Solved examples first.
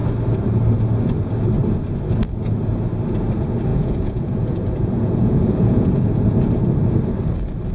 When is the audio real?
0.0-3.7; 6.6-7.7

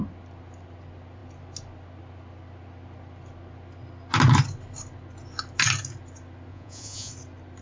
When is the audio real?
0.0-6.5; 7.1-7.6

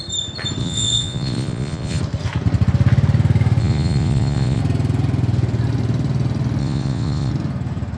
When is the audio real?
0.0-0.6; 2.0-3.6; 4.6-6.6; 7.3-8.0

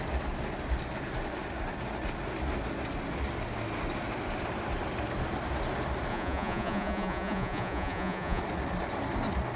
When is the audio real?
0.0-6.1; 8.4-9.6

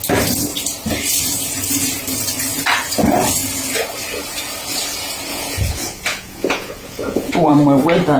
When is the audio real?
0.0-5.3; 7.5-8.2

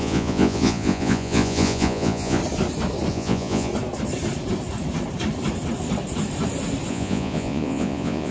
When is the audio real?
2.4-3.1; 3.7-6.9